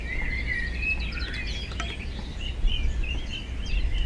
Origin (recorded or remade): recorded